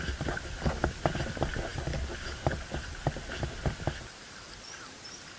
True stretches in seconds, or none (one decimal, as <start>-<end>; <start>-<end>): 0.0-5.4